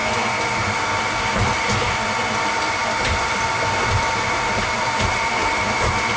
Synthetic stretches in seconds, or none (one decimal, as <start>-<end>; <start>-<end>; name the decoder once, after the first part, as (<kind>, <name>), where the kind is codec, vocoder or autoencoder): 2.3-6.2 (vocoder, BigVGAN v2)

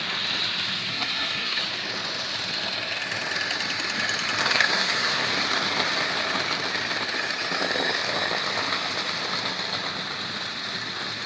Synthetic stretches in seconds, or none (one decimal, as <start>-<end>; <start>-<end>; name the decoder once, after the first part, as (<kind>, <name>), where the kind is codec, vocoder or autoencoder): 0.9-1.6 (codec, SNAC); 4.4-5.3

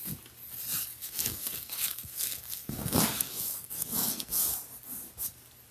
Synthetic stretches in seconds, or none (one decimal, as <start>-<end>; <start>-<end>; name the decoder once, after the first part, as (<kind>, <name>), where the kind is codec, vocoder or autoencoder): 1.0-4.4 (codec, SNAC)

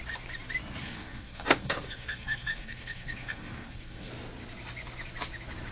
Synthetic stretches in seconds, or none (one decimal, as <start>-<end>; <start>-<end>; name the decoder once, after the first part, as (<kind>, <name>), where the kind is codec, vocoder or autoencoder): 0.8-4.1 (codec, SNAC)

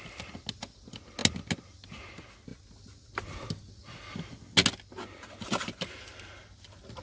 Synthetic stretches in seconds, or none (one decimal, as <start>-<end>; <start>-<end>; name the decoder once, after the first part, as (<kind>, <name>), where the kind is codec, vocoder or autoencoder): none